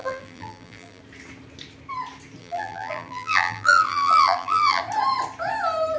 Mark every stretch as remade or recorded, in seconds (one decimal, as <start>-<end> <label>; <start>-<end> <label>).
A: 0.0-1.0 remade; 1.0-2.4 recorded; 2.4-4.8 remade; 4.8-6.0 recorded